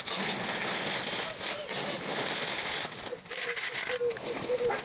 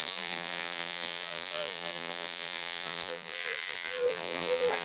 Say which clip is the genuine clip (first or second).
first